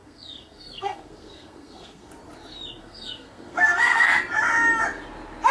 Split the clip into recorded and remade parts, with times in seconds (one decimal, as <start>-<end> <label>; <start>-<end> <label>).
0.0-2.1 remade; 2.1-2.8 recorded; 2.8-4.2 remade; 4.2-5.5 recorded